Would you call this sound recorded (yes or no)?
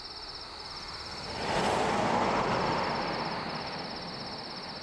yes